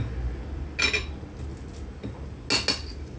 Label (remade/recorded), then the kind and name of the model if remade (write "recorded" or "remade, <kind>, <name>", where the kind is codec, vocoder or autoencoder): recorded